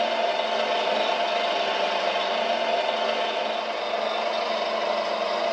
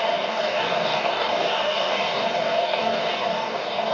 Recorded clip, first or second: first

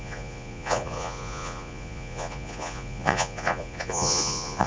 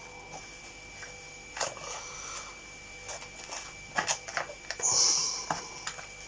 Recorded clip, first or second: second